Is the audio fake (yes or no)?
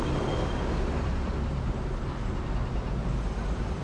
no